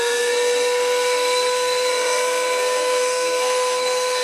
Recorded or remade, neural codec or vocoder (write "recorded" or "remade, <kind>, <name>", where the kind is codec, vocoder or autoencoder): remade, codec, SNAC